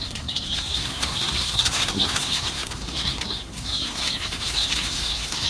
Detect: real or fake fake